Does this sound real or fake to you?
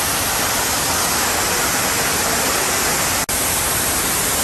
real